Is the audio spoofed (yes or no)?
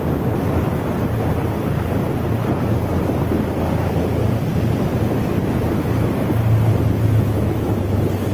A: no